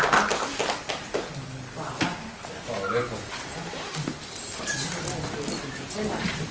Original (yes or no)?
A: yes